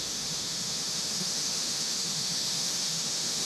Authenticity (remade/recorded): remade